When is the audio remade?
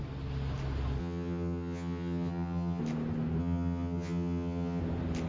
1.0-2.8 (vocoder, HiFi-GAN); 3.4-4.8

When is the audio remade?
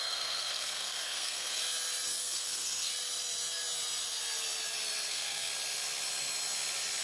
0.0-1.6 (codec, SNAC); 2.2-2.9; 5.1-5.5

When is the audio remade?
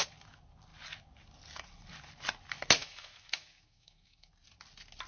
2.8-4.3 (autoencoder, DAC-VAE)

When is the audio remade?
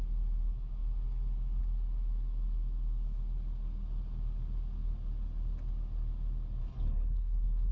6.6-7.7 (codec, HILCodec)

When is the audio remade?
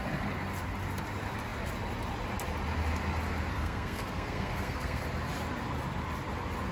3.5-5.0 (codec, SNAC)